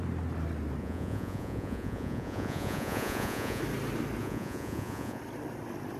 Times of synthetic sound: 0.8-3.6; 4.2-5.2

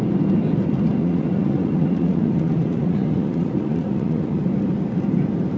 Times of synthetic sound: 1.0-4.4

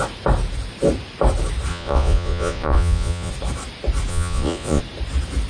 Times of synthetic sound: 1.7-3.3; 4.1-4.8

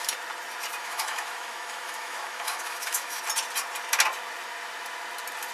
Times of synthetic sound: 0.8-3.2

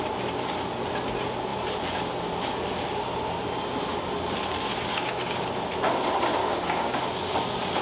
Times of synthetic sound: 4.9-5.4; 6.4-7.0

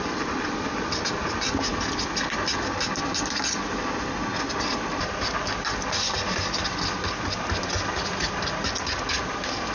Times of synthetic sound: none

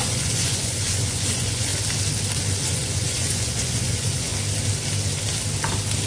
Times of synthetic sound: 0.0-1.7; 2.6-4.3

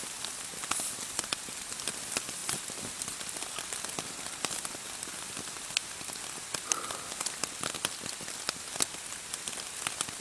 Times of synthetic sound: none